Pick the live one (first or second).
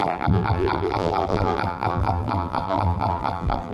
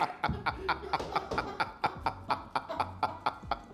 second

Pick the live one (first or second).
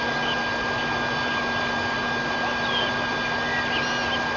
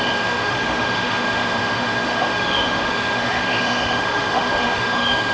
first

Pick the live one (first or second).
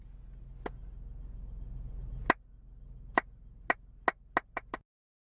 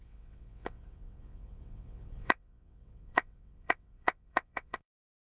first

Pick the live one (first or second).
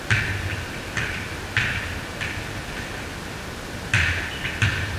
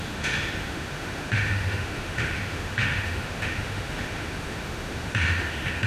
first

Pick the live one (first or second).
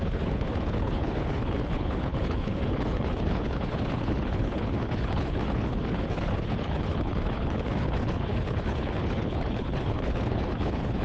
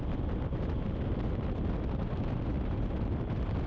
second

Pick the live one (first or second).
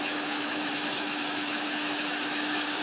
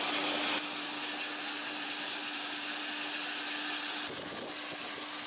second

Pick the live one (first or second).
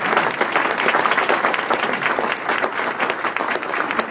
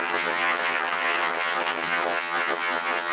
first